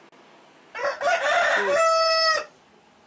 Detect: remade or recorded recorded